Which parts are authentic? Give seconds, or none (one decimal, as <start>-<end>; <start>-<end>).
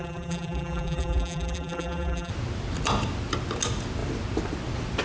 2.3-5.0